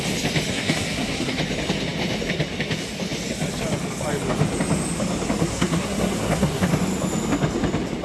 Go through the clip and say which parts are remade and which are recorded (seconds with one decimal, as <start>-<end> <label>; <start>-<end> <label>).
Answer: 0.0-0.5 recorded; 0.5-1.4 remade; 1.4-5.4 recorded; 5.4-6.7 remade; 6.7-8.0 recorded